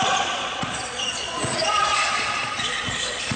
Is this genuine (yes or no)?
no